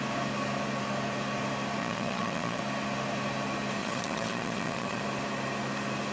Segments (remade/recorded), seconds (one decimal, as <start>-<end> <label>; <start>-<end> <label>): 0.0-1.8 recorded; 1.8-2.6 remade; 2.6-3.8 recorded; 3.8-5.0 remade; 5.0-6.1 recorded